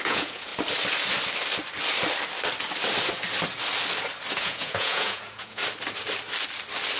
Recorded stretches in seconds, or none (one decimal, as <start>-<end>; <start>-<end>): 0.5-4.3; 5.6-7.0

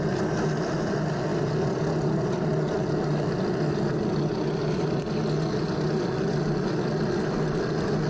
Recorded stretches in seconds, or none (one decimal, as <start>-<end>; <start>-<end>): 0.0-8.1

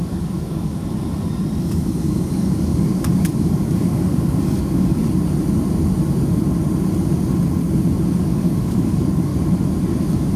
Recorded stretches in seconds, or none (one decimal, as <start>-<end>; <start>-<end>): 0.8-1.6; 5.0-8.1; 9.3-10.4

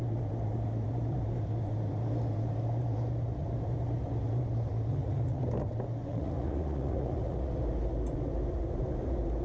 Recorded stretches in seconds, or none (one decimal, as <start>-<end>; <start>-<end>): 0.0-4.9; 5.4-6.1; 7.5-9.4

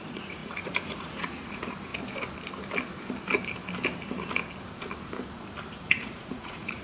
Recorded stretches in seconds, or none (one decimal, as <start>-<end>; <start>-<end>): 1.9-5.8